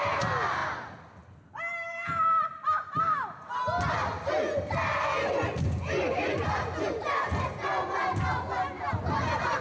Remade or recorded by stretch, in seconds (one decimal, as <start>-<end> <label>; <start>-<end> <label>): 0.0-9.6 recorded